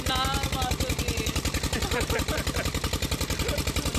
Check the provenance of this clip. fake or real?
real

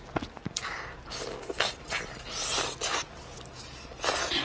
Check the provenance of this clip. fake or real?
real